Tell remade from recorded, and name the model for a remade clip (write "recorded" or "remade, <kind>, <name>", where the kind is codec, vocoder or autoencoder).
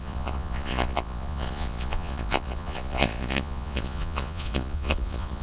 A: remade, vocoder, Vocos